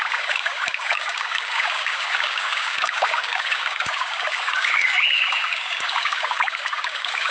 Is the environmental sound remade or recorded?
remade